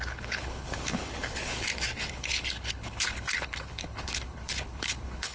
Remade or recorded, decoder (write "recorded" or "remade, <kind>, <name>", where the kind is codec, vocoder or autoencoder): remade, codec, HILCodec